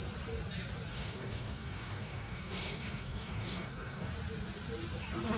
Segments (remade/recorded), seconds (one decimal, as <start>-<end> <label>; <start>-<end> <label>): 0.0-0.9 recorded; 0.9-4.1 remade; 4.1-5.4 recorded

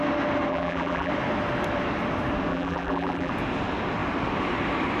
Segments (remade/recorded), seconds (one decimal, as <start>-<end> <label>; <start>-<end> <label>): 0.0-0.5 recorded; 0.5-1.1 remade; 1.1-2.5 recorded; 2.5-3.3 remade; 3.3-5.0 recorded